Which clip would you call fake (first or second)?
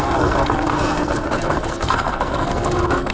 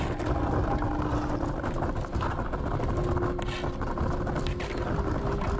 first